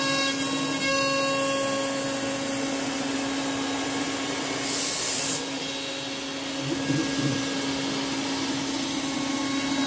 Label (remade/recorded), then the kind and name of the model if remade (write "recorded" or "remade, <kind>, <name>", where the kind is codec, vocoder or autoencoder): recorded